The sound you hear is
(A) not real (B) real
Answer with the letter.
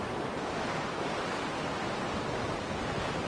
B